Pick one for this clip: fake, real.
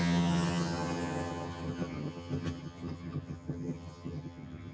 fake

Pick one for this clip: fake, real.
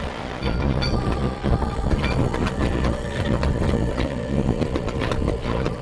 fake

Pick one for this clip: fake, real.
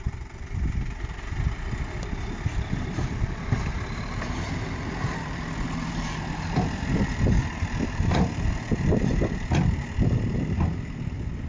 fake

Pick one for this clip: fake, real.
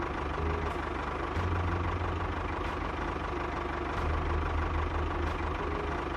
real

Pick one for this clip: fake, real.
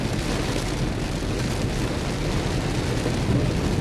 real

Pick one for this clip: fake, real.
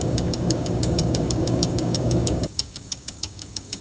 fake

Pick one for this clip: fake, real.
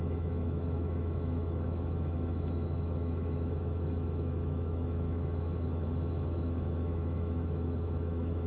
fake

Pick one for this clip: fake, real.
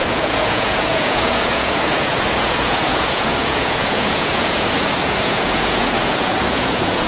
fake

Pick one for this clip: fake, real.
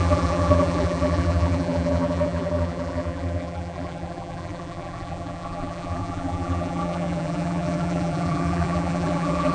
fake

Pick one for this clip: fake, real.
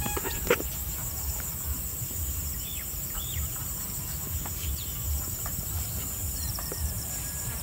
fake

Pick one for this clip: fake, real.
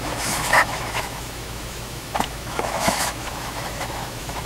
fake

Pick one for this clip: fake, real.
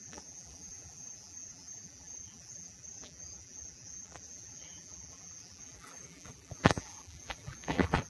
fake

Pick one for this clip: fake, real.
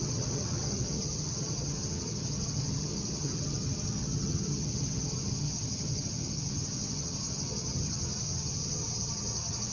fake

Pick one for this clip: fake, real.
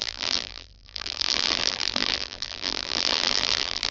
fake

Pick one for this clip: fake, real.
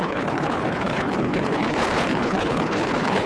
fake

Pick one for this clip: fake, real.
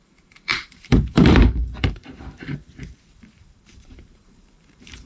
fake